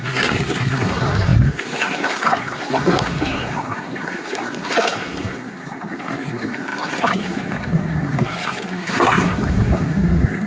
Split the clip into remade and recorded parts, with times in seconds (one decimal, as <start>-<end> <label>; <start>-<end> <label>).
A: 0.0-10.5 remade